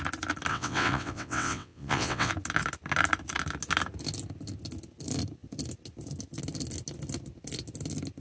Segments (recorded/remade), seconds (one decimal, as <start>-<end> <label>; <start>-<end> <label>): 0.0-0.5 recorded; 0.5-2.3 remade; 2.3-8.2 recorded